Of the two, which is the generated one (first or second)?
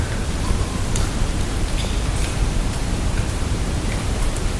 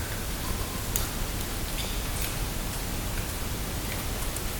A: first